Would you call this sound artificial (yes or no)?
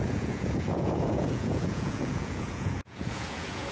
yes